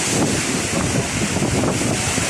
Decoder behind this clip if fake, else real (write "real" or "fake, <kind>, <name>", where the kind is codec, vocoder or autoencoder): real